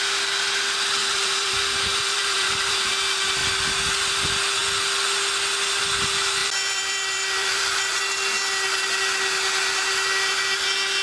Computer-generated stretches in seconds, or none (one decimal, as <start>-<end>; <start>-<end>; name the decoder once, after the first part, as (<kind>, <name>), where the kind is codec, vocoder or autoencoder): 1.0-2.9 (vocoder, BigVGAN v2); 6.4-8.0